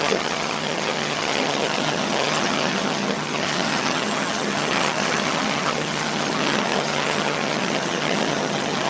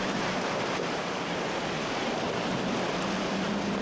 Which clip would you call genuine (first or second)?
second